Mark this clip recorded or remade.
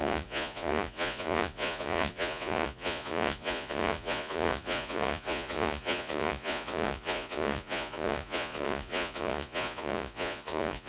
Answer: remade